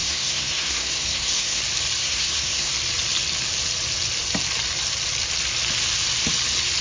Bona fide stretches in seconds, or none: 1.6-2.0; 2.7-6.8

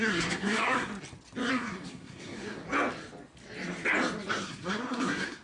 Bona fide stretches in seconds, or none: 0.9-1.5; 2.6-4.3

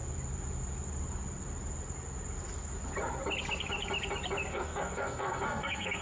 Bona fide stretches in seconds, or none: 0.0-4.5

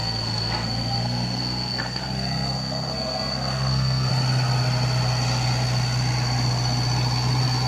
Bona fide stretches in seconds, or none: 4.1-7.7

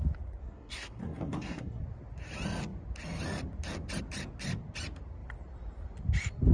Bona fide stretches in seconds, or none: 0.0-0.4; 1.8-6.5

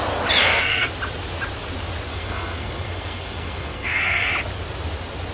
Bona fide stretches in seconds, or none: 0.0-0.4; 0.9-2.1; 4.3-5.3

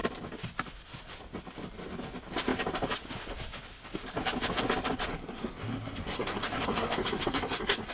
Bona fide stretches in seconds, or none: 0.0-5.1

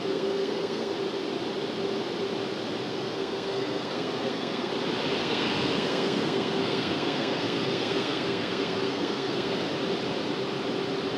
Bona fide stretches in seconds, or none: 0.9-2.9; 4.7-5.2; 9.7-11.2